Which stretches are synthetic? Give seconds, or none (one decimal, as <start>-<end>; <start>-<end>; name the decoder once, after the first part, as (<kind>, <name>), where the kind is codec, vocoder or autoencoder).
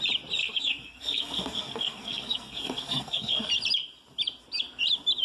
0.4-3.5 (codec, SNAC)